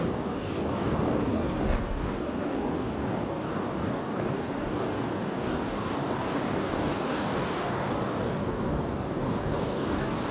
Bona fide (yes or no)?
no